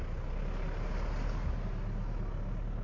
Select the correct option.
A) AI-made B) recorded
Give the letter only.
B